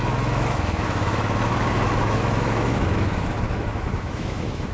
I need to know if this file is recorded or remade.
remade